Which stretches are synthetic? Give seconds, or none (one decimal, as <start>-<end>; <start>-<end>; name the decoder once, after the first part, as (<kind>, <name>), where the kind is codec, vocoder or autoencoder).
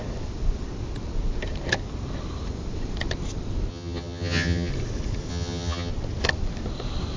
3.7-4.7 (vocoder, HiFi-GAN); 5.3-5.9